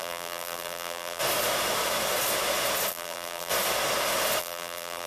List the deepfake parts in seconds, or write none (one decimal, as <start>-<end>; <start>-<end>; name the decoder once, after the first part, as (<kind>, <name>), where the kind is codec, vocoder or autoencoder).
0.0-1.2 (vocoder, BigVGAN v2); 2.9-3.5; 4.4-5.1